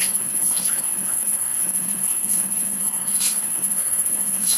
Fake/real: fake